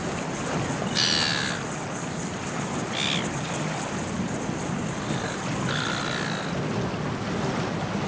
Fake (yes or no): no